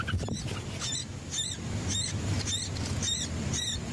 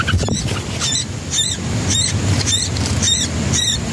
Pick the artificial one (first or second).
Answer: second